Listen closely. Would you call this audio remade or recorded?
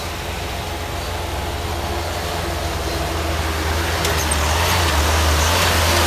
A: recorded